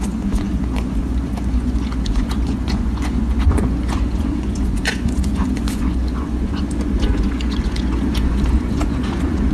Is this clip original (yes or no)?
no